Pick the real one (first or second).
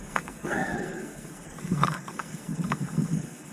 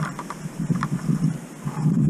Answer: second